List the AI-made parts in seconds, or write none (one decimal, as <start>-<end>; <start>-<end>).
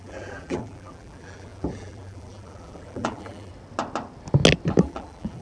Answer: 0.0-3.5; 4.8-5.4